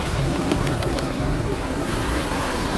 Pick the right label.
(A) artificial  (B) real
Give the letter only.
A